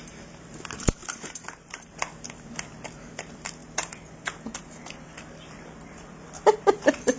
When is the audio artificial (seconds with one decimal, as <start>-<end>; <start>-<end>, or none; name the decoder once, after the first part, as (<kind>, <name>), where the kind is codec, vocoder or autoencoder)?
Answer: 0.0-7.2 (vocoder, BigVGAN v2)